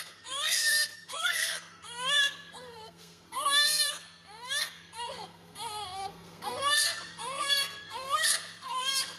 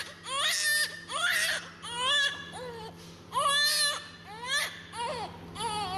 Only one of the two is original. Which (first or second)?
second